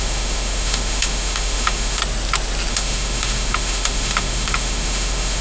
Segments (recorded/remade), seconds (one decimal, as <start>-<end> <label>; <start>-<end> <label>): 0.0-2.0 remade; 2.0-2.7 recorded; 2.7-5.4 remade